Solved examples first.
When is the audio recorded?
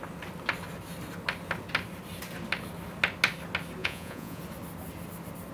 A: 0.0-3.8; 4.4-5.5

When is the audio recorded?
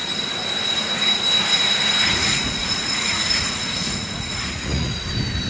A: 0.0-2.2; 5.0-5.5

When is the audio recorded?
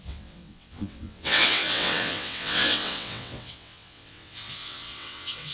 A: none